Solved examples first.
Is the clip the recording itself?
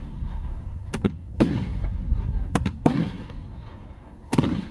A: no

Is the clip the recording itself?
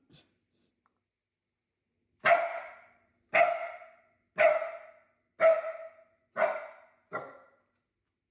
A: yes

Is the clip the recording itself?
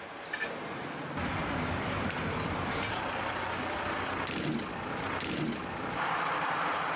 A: yes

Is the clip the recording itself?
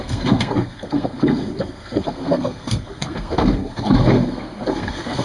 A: no